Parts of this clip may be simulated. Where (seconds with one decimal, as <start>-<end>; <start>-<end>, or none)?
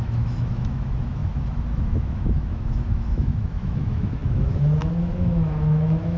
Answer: 0.0-6.2